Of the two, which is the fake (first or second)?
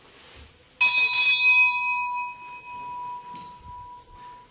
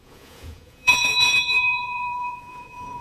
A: second